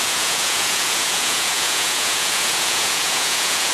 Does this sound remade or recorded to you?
remade